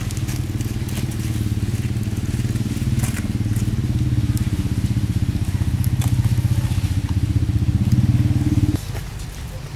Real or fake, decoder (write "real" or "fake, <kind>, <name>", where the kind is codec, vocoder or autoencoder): real